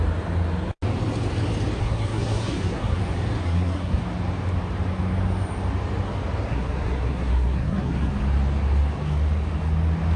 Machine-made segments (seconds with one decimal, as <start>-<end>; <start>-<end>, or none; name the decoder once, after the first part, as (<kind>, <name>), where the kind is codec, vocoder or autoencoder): 1.8-3.0 (codec, SNAC); 3.4-4.0; 6.5-8.1